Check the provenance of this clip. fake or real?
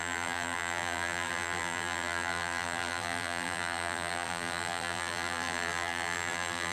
fake